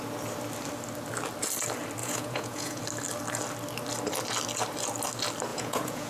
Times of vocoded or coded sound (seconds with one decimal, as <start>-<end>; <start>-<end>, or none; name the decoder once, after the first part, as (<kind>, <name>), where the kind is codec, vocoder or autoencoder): 2.0-2.8 (vocoder, Vocos); 5.5-6.1